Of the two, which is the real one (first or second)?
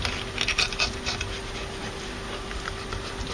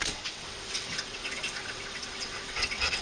first